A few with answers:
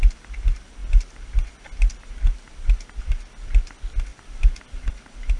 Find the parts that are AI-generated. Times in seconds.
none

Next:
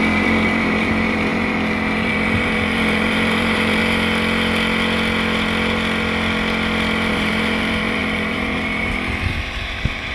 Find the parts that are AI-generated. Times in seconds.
0.0-3.8; 7.1-10.1

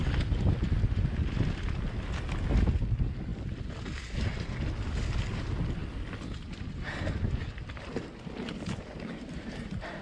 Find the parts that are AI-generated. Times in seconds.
none

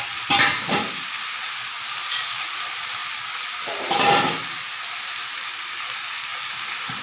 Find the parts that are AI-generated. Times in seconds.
none

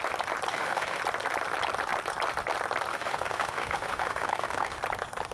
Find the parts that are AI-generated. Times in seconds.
0.5-1.0; 2.9-4.8

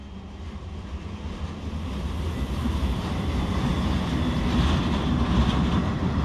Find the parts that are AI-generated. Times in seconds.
none

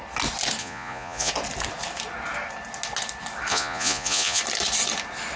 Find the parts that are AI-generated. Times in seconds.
0.6-1.3; 3.5-4.4